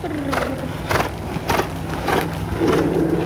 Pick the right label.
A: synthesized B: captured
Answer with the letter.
B